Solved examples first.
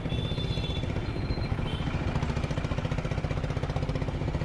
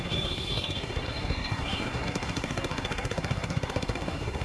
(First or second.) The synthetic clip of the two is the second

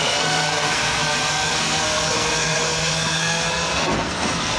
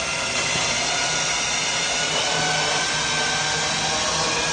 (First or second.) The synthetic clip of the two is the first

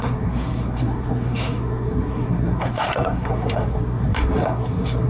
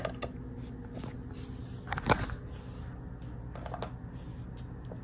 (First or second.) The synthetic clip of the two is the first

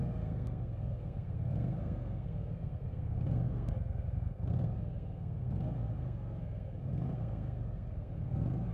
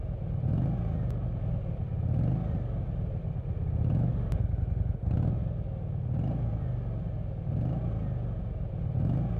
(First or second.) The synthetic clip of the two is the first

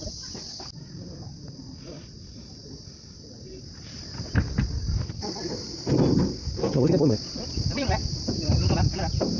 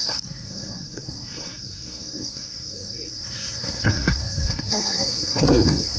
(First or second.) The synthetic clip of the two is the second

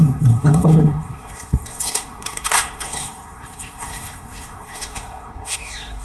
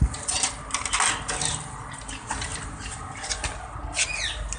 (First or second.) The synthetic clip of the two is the first